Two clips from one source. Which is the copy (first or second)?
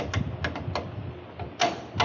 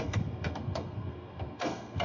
second